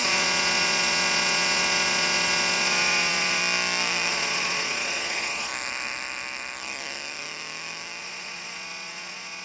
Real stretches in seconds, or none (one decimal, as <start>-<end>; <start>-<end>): 3.4-4.1; 5.5-8.0